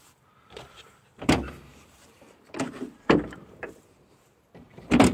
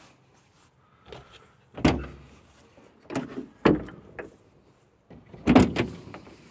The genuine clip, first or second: second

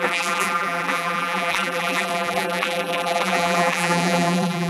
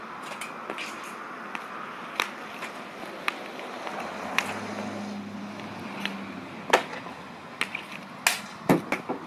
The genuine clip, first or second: second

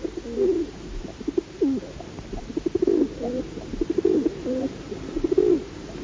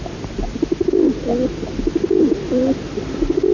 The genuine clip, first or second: second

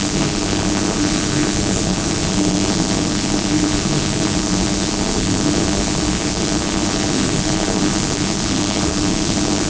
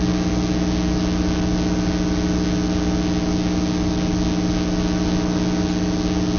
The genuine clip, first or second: second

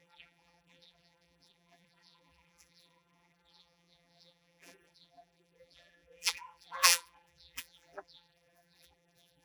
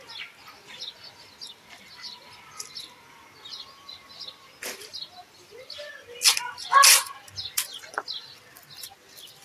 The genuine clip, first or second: second